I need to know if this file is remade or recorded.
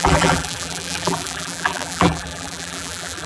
remade